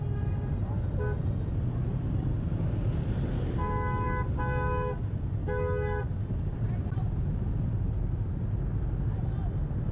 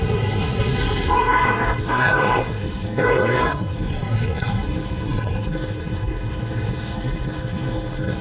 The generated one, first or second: second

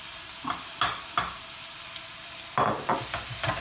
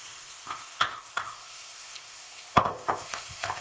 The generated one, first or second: second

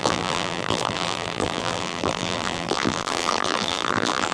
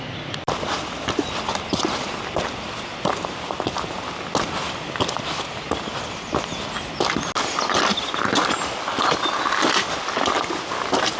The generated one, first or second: first